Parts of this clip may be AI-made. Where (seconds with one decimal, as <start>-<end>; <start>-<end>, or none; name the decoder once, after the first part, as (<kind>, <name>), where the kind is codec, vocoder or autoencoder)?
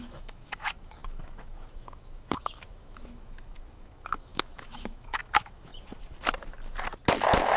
0.0-5.7 (autoencoder, DAC-VAE)